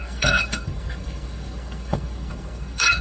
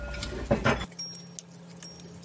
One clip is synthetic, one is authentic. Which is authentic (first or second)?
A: second